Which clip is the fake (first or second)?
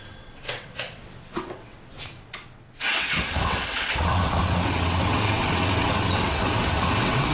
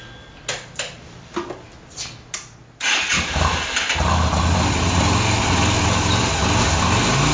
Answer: first